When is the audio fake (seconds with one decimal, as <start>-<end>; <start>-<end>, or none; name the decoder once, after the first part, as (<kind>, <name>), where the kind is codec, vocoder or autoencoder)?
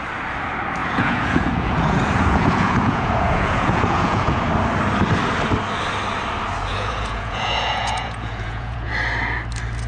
0.8-4.4 (vocoder, Vocos); 6.7-8.9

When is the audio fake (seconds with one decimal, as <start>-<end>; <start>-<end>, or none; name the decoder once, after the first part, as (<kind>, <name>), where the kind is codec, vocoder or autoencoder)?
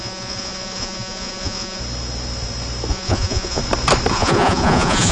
0.0-1.8 (vocoder, Vocos); 2.9-3.6; 4.1-5.1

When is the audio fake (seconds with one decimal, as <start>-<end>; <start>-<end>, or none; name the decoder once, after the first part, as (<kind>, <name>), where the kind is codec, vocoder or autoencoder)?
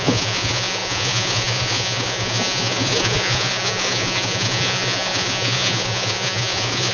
0.0-6.9 (vocoder, Vocos)